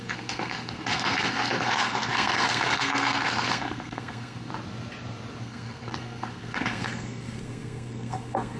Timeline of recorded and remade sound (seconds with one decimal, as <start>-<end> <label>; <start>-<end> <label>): 0.0-4.5 remade; 4.5-5.4 recorded; 5.4-8.6 remade